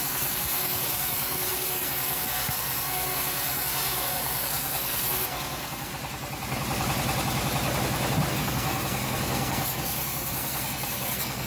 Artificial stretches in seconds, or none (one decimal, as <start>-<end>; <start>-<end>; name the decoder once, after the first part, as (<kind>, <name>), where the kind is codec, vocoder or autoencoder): 0.0-5.9 (codec, SNAC); 8.3-11.5